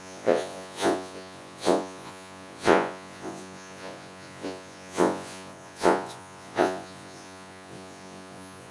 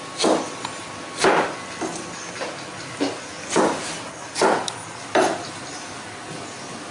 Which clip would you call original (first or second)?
second